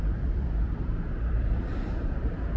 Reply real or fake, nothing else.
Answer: fake